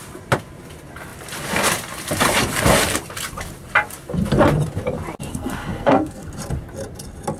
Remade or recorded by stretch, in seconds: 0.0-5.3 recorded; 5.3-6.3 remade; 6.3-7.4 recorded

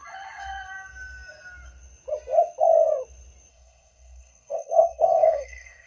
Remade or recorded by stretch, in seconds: 0.0-3.5 recorded; 3.5-5.9 remade

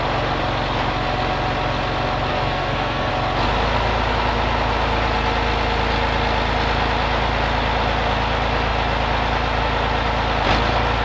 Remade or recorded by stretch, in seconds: 0.0-2.3 recorded; 2.3-3.1 remade; 3.1-11.0 recorded

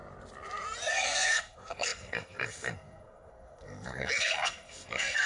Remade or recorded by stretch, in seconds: 0.0-0.9 recorded; 0.9-5.3 remade

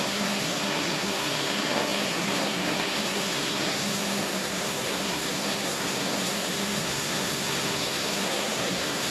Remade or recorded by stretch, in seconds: 0.0-9.1 remade

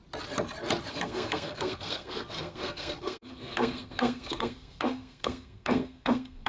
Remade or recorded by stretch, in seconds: 0.0-0.9 recorded; 0.9-6.5 remade

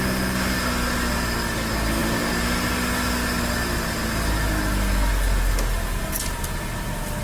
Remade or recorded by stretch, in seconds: 0.0-7.2 recorded

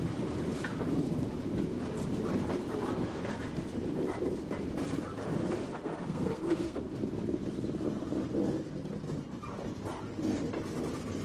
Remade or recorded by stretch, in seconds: 0.0-5.6 recorded; 5.6-6.8 remade; 6.8-11.2 recorded